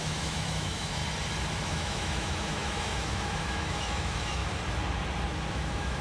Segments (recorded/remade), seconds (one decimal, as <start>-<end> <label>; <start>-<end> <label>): 0.0-1.0 remade; 1.0-1.6 recorded; 1.6-4.4 remade; 4.4-5.5 recorded; 5.5-6.0 remade